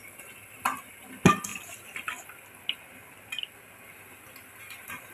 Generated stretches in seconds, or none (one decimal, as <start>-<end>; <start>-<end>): none